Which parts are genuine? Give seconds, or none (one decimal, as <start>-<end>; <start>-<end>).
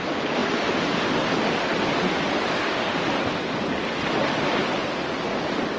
0.0-5.8